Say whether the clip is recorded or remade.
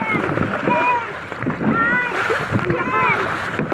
recorded